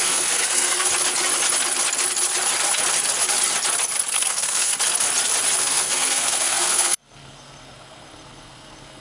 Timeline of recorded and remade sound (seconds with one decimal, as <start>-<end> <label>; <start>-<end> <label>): 0.0-0.9 remade; 0.9-4.1 recorded; 4.1-4.7 remade; 4.7-5.6 recorded; 5.6-9.0 remade